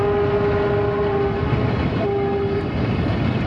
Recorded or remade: recorded